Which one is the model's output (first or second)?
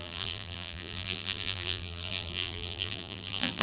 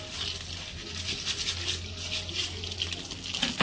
first